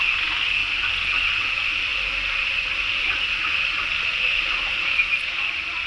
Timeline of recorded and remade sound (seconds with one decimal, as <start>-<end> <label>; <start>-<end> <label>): 0.0-5.9 recorded